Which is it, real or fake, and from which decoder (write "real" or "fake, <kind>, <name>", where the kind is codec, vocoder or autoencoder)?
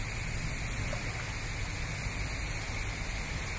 real